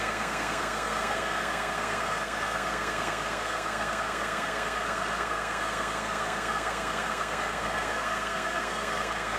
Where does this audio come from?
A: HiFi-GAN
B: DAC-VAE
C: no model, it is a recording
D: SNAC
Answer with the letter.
D